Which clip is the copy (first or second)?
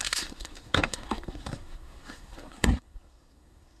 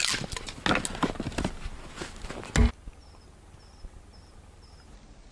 first